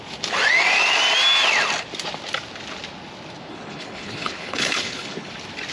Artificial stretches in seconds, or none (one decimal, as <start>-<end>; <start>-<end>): 3.5-5.3